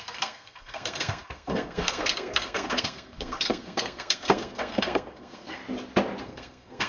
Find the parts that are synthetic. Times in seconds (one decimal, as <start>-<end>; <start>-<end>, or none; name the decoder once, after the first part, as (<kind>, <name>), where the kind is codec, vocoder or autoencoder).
0.0-5.6 (codec, SNAC); 6.2-6.9